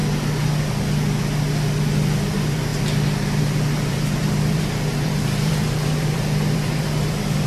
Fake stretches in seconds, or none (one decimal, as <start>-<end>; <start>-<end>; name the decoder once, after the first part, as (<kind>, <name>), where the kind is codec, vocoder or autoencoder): 2.3-2.7 (vocoder, BigVGAN v2); 3.4-7.5